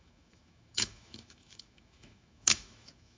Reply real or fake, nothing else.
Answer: fake